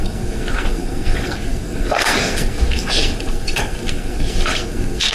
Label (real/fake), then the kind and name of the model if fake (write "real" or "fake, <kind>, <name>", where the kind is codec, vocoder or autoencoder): fake, codec, SNAC